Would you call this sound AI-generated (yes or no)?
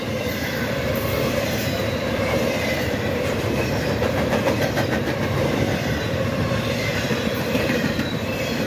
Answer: yes